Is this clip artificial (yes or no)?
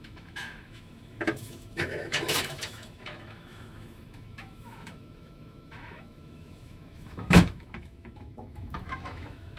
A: yes